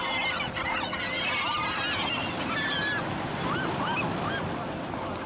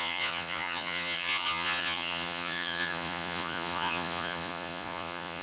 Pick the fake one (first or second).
second